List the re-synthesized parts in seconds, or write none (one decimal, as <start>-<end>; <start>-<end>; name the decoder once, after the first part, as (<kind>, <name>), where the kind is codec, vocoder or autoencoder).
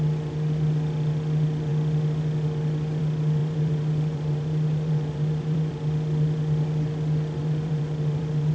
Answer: 3.4-5.7 (vocoder, BigVGAN v2); 7.4-8.5